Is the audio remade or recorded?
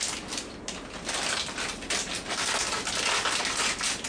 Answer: recorded